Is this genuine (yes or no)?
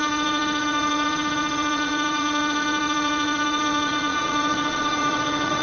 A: no